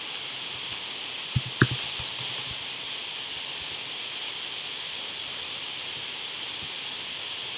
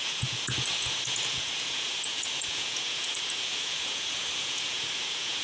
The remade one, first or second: second